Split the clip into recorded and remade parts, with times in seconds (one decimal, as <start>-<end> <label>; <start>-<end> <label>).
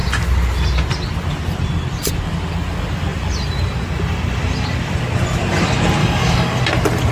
0.0-6.0 recorded; 6.0-6.6 remade; 6.6-7.1 recorded